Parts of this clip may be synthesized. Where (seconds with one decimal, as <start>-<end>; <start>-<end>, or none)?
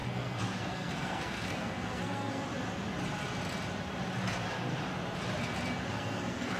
0.0-2.4; 5.9-6.6